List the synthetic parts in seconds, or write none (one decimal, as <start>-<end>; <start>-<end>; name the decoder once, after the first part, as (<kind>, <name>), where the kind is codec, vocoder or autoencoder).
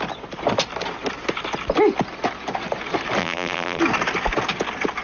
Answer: 3.2-3.8 (vocoder, BigVGAN v2)